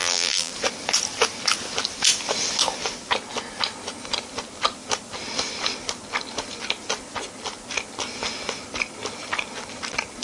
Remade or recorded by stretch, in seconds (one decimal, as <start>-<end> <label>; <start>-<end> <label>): 0.0-0.5 remade; 0.5-10.2 recorded